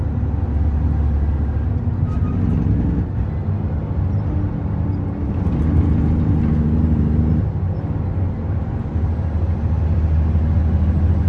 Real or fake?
real